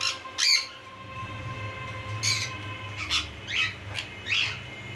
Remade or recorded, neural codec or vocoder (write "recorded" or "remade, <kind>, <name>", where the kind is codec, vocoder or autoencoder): recorded